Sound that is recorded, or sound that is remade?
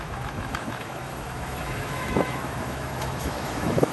remade